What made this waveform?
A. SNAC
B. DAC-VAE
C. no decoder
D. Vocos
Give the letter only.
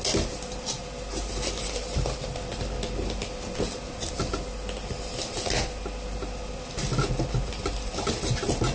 C